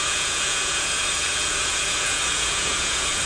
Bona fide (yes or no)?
no